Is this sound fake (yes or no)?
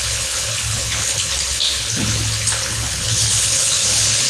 yes